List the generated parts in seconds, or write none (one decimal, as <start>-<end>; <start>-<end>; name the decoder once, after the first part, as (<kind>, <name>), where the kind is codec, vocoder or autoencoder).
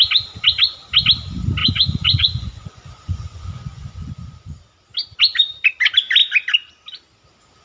1.6-4.6 (vocoder, Vocos)